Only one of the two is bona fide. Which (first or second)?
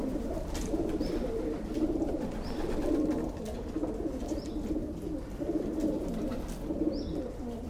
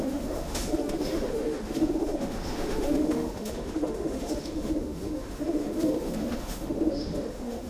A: first